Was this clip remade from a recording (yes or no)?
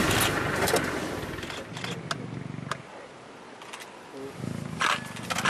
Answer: no